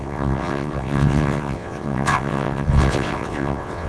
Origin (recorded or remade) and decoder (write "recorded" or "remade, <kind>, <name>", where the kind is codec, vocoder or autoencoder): remade, vocoder, WaveNeXt